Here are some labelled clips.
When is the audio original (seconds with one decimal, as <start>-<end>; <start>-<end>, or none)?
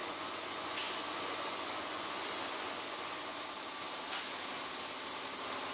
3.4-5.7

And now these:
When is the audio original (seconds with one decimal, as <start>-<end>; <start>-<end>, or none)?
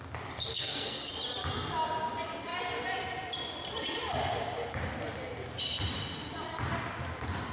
0.0-0.5; 1.1-7.5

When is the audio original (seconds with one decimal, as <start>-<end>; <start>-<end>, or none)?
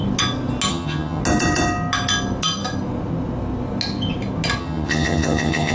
0.0-0.7; 1.2-4.6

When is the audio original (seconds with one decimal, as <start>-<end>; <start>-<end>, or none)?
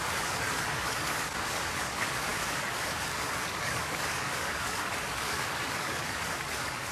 none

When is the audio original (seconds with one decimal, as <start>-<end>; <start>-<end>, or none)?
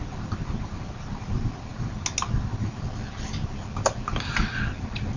0.0-5.2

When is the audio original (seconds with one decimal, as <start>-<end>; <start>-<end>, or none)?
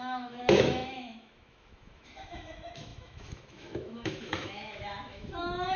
none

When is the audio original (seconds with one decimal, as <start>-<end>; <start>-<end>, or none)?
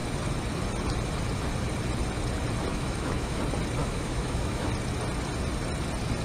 0.0-2.7; 3.4-3.8; 4.7-6.2